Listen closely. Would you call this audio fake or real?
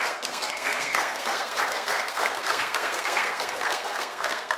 fake